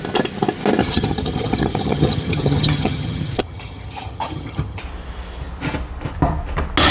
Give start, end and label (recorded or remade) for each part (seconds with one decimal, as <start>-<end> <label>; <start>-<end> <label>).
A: 0.0-0.8 recorded; 0.8-4.8 remade; 4.8-6.9 recorded